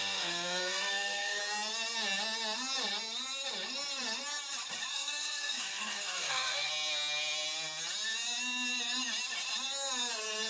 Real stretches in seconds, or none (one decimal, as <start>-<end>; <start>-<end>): 1.4-4.9; 6.7-10.5